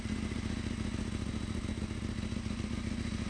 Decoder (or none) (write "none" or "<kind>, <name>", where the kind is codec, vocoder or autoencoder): none